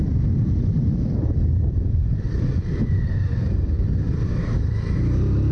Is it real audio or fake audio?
real